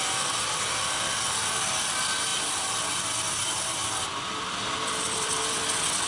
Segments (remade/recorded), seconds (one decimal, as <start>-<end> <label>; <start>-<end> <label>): 0.0-6.1 recorded